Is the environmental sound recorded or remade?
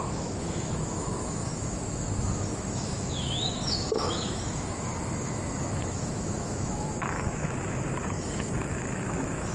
remade